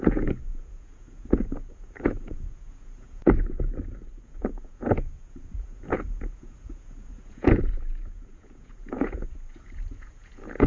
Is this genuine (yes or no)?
no